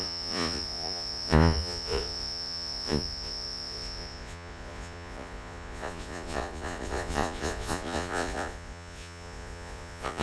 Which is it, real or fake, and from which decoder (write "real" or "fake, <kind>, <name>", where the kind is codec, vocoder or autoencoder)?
fake, vocoder, Vocos